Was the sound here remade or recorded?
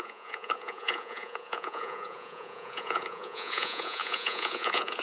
remade